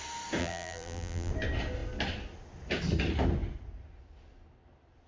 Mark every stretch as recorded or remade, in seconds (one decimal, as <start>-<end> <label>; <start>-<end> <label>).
0.0-0.4 recorded; 0.4-1.3 remade; 1.3-5.1 recorded